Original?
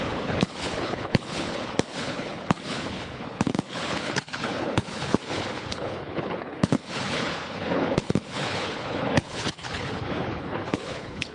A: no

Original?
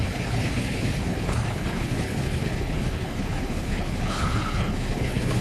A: no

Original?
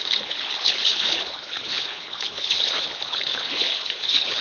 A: no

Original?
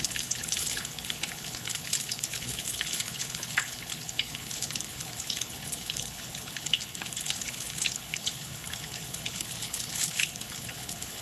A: no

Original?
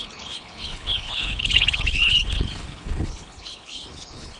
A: no